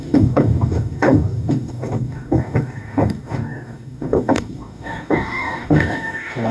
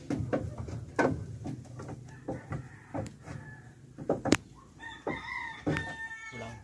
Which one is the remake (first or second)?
first